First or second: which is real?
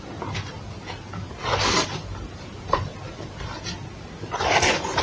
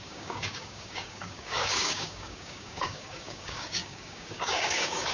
first